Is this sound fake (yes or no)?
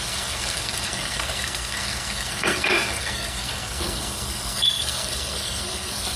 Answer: yes